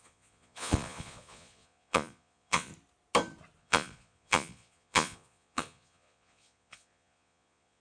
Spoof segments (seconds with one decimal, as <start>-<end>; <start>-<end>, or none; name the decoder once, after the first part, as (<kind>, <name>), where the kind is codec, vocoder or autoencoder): 0.0-2.7 (vocoder, Vocos); 3.6-7.8